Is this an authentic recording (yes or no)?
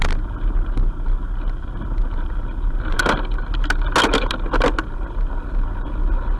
yes